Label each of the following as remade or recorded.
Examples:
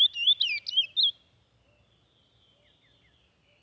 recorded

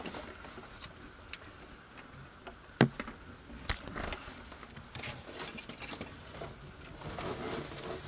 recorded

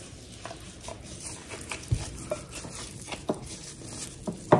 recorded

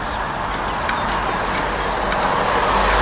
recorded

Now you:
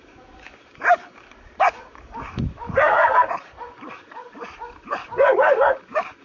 remade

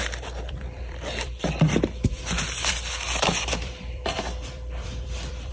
remade